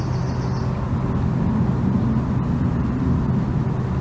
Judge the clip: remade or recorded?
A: recorded